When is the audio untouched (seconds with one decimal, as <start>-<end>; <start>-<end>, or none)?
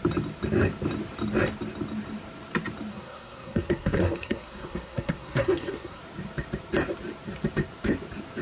0.0-2.9; 6.0-8.4